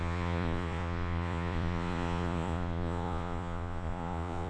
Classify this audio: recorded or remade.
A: remade